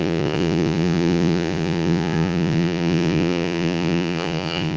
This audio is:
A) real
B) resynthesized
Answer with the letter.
B